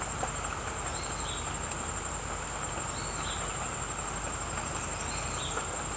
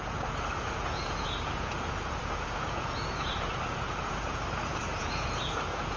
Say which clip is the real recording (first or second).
first